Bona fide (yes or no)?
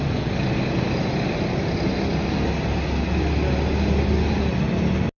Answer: yes